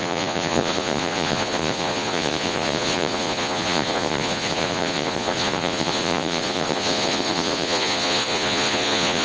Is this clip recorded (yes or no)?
no